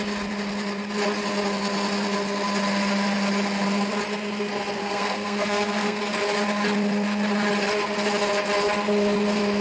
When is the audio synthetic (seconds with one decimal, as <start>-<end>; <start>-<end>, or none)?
4.8-6.0